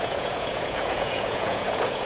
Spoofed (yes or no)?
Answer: yes